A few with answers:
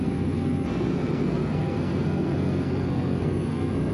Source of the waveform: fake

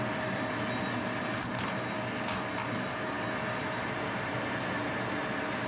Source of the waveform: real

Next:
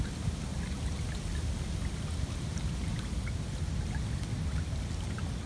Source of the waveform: real